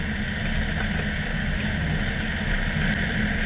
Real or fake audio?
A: real